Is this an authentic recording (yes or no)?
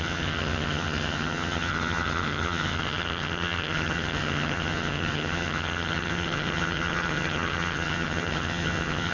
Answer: no